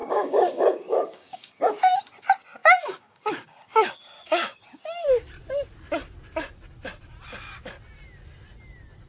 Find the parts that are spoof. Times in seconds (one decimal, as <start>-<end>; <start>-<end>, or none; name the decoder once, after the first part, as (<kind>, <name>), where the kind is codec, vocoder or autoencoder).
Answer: 0.0-1.7 (codec, DAC); 2.6-4.8